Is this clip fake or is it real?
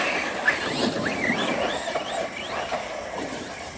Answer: real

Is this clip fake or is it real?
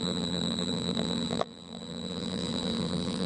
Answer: fake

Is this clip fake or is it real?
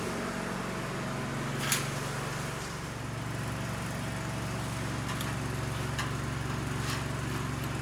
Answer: real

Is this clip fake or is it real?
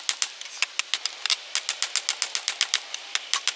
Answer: real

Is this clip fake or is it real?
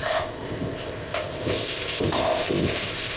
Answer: fake